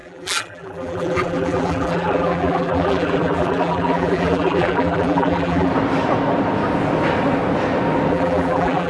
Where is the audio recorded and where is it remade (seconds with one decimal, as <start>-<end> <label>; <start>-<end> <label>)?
0.0-5.7 remade; 5.7-8.1 recorded; 8.1-8.9 remade